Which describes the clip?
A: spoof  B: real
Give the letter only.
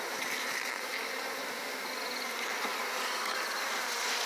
B